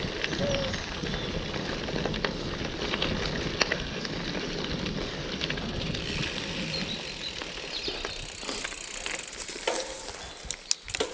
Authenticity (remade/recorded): recorded